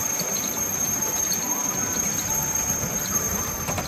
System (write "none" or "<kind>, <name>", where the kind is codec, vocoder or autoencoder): vocoder, BigVGAN v2